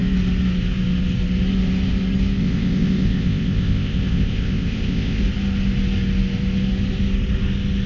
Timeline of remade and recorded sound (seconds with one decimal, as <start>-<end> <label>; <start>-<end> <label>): 0.0-2.4 recorded; 2.4-5.2 remade; 5.2-7.9 recorded